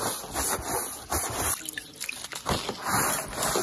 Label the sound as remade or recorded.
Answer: recorded